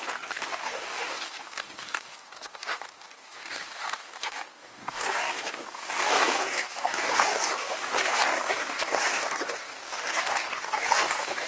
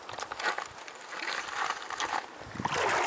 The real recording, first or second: second